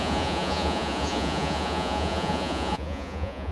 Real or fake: fake